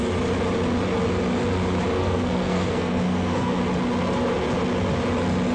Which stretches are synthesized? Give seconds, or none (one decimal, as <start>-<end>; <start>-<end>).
2.0-3.6